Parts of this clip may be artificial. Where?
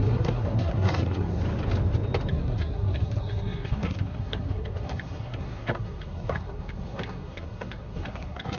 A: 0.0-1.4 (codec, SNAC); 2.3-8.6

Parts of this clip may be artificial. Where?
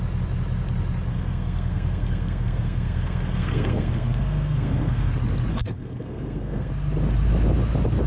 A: 1.1-5.1 (codec, SNAC); 5.5-6.7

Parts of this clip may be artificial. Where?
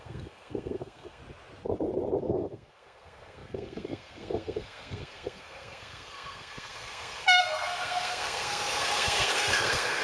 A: 0.0-1.2 (codec, SNAC); 2.2-10.0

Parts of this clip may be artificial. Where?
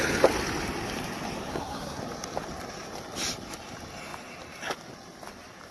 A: 1.5-2.0 (codec, SNAC)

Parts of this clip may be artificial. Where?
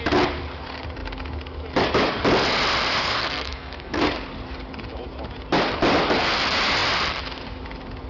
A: 3.0-4.0 (codec, SNAC)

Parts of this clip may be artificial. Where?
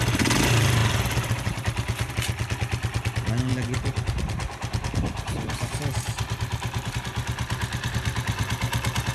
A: none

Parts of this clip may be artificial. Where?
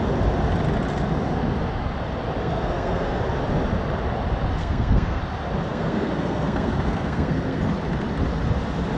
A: 2.4-3.2 (codec, SNAC); 4.6-5.2; 5.7-7.6